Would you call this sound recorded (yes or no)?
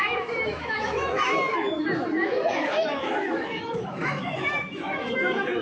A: no